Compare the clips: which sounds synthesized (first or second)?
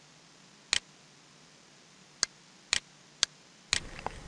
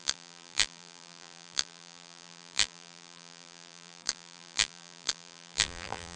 second